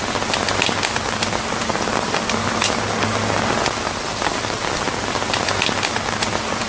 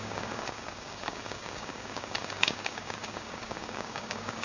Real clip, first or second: first